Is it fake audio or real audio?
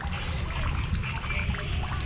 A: real